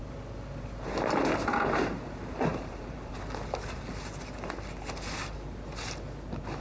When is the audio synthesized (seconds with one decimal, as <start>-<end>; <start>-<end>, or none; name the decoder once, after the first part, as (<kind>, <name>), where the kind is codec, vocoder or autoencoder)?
2.5-3.1 (vocoder, BigVGAN v2)